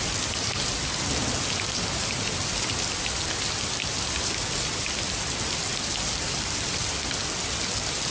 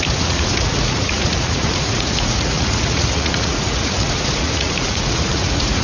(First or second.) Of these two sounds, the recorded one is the first